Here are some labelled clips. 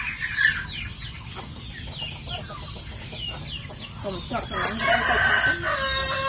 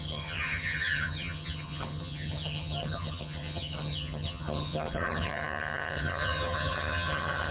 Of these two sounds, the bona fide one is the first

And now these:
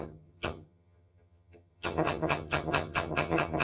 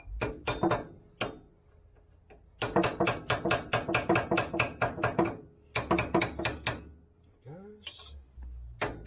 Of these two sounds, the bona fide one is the second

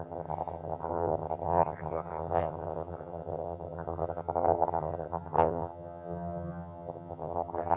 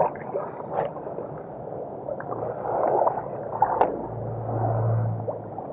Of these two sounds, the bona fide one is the second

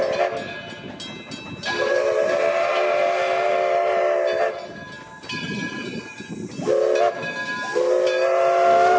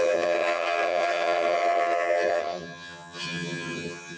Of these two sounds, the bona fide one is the first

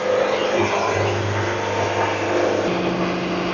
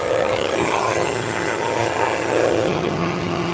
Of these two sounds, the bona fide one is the first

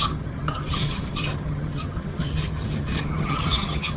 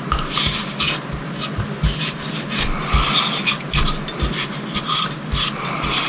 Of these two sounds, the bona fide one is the second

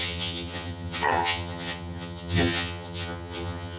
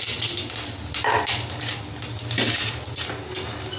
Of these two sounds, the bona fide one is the second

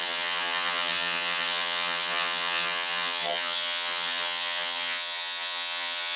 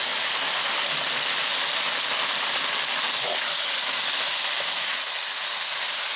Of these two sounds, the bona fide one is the second